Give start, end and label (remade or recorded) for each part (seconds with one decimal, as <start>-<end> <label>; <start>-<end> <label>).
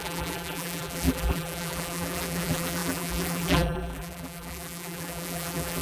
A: 0.0-5.8 remade